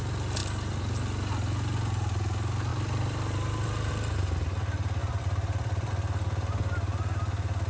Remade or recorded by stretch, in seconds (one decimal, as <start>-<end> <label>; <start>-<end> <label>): 0.0-2.7 recorded; 2.7-3.9 remade; 3.9-5.0 recorded; 5.0-5.9 remade; 5.9-7.7 recorded